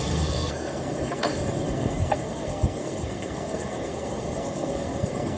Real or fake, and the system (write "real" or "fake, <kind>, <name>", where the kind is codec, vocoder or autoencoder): fake, codec, SNAC